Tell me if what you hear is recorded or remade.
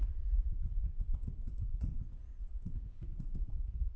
remade